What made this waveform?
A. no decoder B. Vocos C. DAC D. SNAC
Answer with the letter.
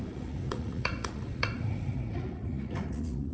B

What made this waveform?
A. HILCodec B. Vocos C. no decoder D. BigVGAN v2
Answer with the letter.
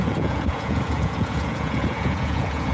B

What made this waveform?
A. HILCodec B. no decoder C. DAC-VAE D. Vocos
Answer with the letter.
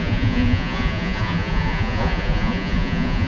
D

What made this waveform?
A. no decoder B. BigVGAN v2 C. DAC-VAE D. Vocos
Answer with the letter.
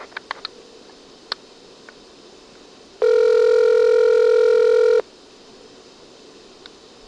A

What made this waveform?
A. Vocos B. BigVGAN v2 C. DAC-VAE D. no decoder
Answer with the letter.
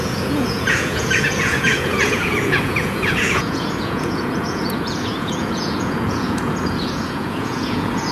A